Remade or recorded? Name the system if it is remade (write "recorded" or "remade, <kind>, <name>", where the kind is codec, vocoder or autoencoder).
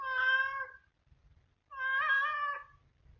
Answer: recorded